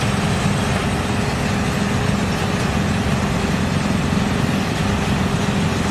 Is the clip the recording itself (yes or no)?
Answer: yes